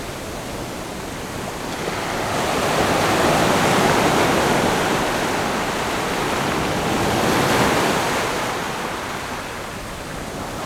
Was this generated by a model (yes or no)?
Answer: no